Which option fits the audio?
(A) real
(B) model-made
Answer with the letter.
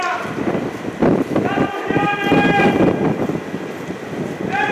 A